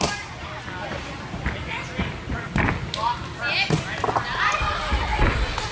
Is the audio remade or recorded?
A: recorded